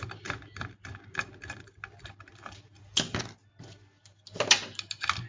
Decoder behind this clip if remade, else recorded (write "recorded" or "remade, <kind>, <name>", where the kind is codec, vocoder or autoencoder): recorded